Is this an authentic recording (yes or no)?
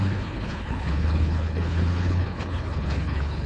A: no